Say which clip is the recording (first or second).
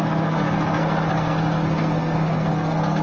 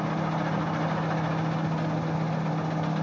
second